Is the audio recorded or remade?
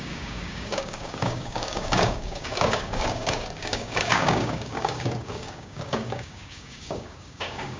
remade